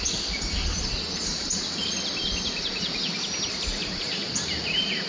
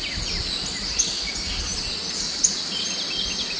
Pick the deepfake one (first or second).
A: first